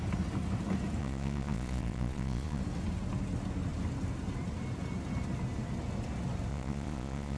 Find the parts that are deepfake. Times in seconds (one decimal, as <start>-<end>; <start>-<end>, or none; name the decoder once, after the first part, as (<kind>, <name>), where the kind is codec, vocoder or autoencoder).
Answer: 1.0-2.6 (vocoder, Vocos); 6.5-7.4